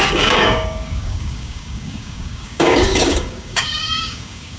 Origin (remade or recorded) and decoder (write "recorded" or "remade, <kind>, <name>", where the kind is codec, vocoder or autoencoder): remade, codec, DAC